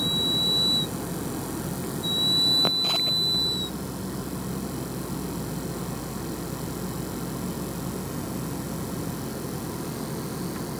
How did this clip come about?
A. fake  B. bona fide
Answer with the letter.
B